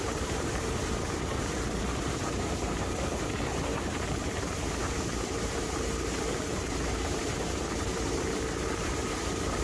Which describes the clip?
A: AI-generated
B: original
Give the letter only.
A